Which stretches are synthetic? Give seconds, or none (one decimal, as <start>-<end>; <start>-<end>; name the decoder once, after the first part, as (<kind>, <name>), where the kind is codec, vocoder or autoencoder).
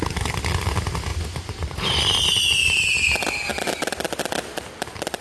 1.1-2.0 (vocoder, Vocos)